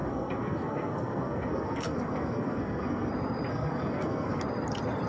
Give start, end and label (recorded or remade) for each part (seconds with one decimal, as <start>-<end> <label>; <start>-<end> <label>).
0.0-3.1 remade; 3.1-3.5 recorded; 3.5-4.4 remade; 4.4-5.1 recorded